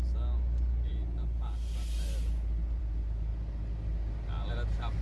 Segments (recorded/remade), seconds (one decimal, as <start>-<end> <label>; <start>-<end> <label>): 0.0-5.0 recorded